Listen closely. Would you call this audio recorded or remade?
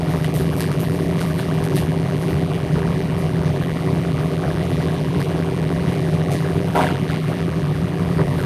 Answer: remade